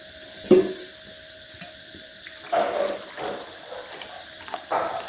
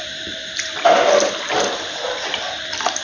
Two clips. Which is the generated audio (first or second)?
second